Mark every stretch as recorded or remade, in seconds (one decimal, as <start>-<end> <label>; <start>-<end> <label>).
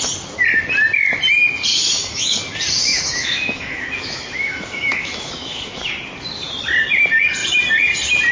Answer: 0.0-1.7 recorded; 1.7-2.4 remade; 2.4-2.9 recorded; 2.9-5.9 remade; 5.9-8.3 recorded